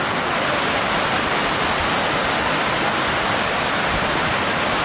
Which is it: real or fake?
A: real